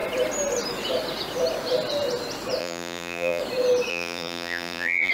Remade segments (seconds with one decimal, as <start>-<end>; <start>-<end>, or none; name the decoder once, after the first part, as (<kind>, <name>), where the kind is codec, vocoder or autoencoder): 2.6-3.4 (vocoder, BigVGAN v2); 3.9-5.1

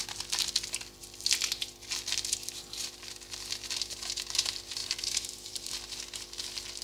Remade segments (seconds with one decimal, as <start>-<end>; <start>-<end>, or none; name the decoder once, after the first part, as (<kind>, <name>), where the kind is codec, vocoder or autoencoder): 4.8-5.7 (vocoder, BigVGAN v2)

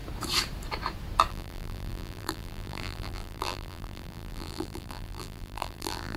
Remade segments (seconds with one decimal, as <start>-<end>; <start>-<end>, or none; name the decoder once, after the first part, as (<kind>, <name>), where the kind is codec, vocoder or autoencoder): 1.3-6.2 (vocoder, BigVGAN v2)

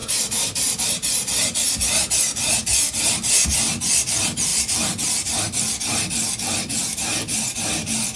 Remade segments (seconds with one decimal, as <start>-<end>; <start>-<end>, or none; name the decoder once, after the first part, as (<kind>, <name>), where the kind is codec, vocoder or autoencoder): 4.5-5.4 (vocoder, BigVGAN v2)

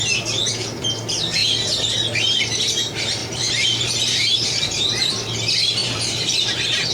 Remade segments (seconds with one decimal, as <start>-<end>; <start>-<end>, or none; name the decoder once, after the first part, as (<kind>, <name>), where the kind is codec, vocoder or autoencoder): 3.2-5.1 (vocoder, BigVGAN v2); 5.8-6.9

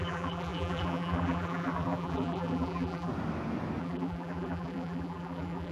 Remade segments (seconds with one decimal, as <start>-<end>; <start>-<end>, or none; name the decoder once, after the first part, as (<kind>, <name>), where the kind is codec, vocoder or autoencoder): 0.0-3.1 (vocoder, BigVGAN v2); 3.8-5.7